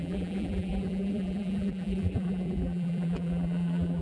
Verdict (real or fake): fake